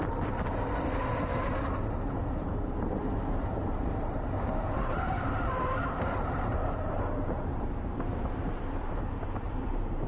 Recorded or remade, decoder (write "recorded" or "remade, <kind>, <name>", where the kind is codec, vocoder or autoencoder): remade, vocoder, BigVGAN v2